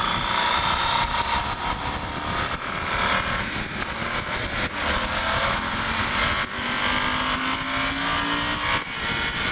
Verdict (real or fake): real